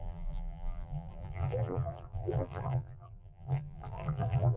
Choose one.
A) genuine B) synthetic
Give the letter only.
B